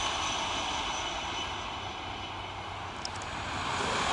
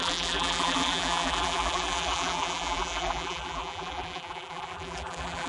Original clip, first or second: first